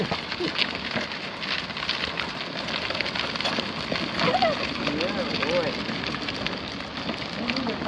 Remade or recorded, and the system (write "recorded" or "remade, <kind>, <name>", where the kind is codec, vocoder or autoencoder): recorded